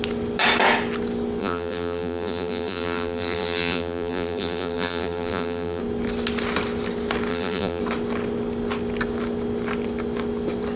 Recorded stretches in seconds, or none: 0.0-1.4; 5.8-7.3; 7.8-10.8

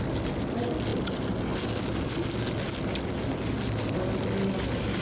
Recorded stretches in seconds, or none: 0.0-5.0